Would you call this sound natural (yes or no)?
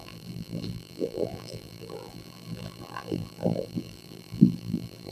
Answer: no